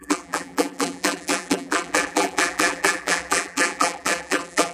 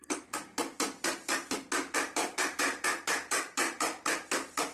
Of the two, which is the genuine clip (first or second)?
second